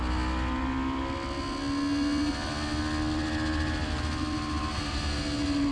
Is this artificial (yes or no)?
no